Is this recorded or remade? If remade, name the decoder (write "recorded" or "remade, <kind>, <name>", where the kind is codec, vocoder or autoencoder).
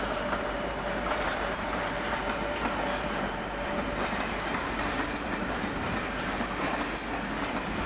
remade, vocoder, BigVGAN v2